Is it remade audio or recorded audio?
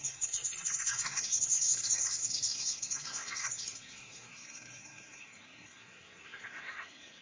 remade